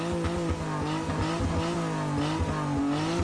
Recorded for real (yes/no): yes